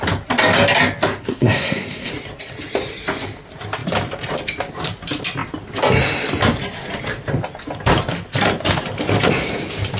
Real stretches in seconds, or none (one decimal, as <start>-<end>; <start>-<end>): 0.0-1.2; 2.1-10.0